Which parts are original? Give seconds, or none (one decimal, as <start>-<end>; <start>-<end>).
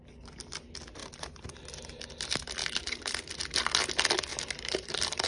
0.0-1.0; 1.5-2.6; 3.3-4.3